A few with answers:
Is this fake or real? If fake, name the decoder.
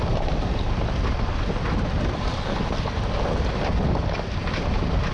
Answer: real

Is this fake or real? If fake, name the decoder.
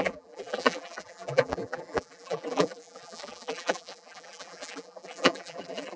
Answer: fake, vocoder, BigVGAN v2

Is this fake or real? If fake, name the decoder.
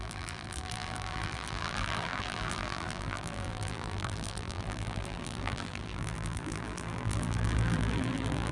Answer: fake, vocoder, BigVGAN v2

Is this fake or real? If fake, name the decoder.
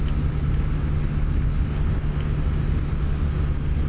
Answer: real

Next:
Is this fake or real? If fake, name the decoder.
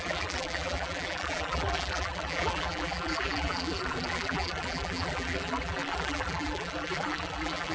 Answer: fake, vocoder, BigVGAN v2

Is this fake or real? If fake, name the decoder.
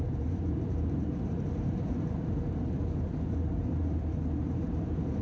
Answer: fake, vocoder, BigVGAN v2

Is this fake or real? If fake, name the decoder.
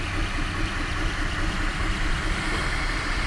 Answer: real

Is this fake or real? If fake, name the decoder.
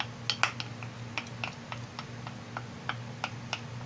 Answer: real